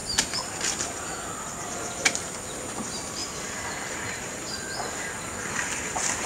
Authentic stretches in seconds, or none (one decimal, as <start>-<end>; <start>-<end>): 0.0-6.3